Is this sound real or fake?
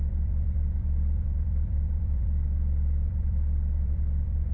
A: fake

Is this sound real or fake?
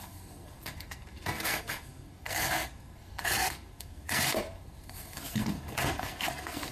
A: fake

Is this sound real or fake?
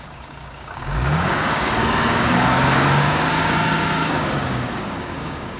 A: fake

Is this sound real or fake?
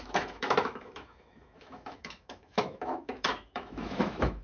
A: fake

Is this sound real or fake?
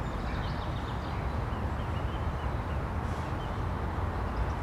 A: real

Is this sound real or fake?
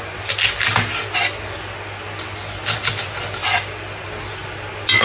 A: real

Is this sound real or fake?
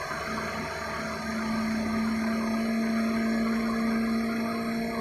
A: real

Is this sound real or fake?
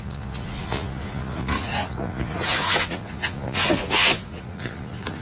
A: fake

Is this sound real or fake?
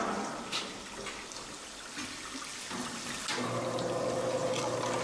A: real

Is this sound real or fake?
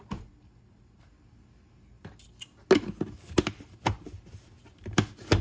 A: real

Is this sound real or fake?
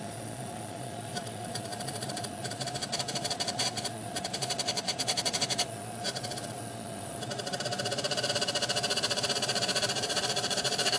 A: fake